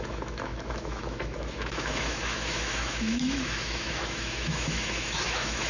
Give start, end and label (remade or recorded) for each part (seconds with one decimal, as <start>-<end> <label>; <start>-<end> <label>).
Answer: 0.0-5.7 remade